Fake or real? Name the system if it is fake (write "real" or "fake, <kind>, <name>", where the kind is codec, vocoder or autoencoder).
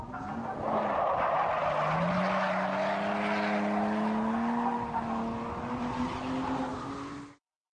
real